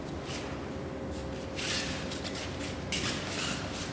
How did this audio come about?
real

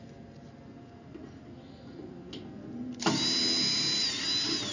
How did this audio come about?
real